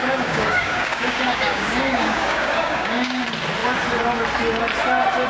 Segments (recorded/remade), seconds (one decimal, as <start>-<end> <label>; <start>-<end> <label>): 0.0-3.2 remade; 3.2-5.3 recorded